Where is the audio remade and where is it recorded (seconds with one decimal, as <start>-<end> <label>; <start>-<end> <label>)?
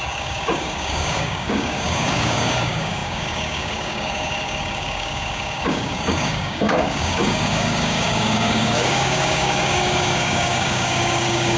0.0-11.6 remade